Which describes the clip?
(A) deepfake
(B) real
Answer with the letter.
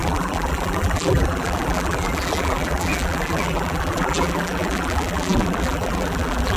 A